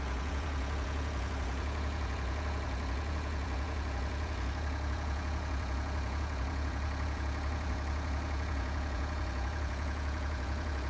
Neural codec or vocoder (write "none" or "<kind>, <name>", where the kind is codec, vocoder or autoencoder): vocoder, Vocos